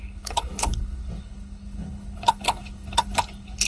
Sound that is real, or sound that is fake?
fake